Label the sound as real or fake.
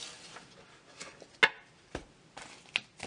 real